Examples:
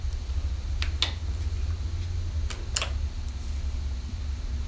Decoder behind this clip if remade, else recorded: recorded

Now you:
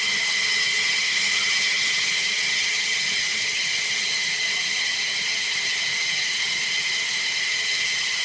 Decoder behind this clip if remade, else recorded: remade, vocoder, HiFi-GAN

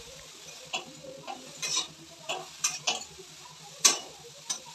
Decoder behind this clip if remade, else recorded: remade, vocoder, BigVGAN v2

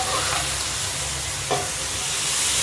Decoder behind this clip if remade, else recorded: recorded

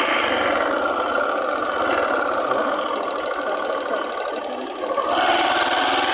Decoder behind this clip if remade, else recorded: recorded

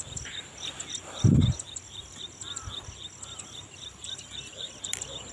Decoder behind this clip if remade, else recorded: recorded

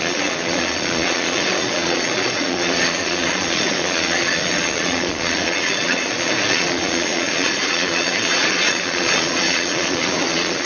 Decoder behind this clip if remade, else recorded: remade, vocoder, Vocos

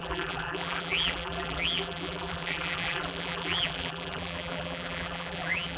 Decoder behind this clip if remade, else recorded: remade, vocoder, BigVGAN v2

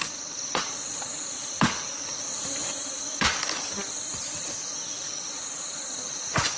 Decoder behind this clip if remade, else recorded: recorded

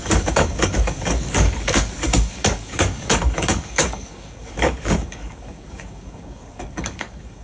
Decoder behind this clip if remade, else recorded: remade, codec, DAC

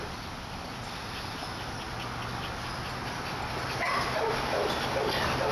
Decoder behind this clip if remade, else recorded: recorded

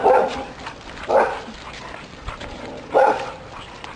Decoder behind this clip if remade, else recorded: recorded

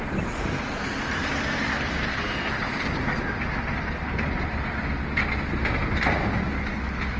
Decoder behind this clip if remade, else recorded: recorded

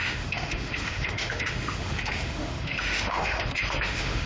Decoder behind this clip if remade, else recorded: remade, autoencoder, DAC-VAE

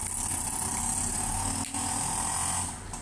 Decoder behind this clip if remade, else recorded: recorded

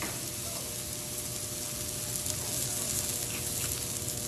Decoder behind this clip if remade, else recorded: recorded